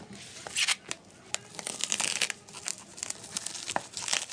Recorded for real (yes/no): yes